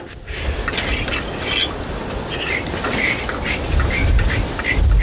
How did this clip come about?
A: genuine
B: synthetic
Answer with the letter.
A